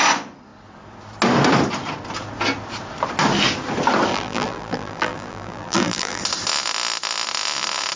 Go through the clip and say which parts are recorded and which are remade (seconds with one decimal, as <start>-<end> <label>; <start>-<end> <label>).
0.0-4.1 recorded; 4.1-6.2 remade; 6.2-8.0 recorded